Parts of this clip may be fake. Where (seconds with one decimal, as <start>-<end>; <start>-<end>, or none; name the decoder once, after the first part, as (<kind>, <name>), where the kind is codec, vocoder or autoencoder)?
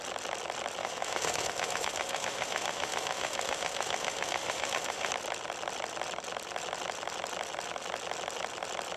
0.8-5.1 (autoencoder, DAC-VAE)